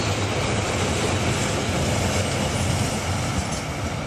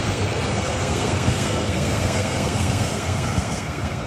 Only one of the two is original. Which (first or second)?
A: first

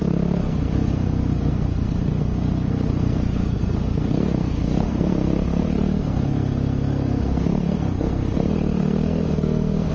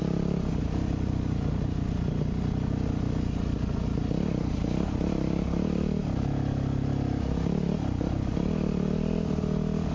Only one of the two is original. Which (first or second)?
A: second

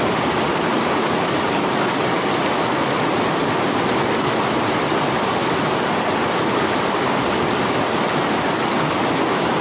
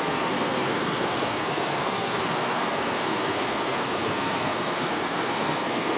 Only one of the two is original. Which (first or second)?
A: first